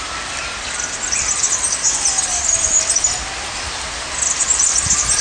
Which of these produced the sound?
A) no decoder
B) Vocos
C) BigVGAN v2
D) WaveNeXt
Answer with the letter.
A